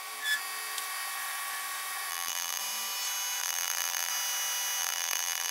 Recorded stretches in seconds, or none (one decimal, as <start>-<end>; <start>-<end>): 0.0-2.1; 2.6-3.4; 4.1-4.8